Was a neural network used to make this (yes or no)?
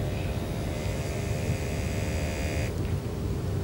no